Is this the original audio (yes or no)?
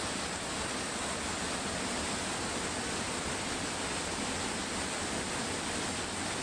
yes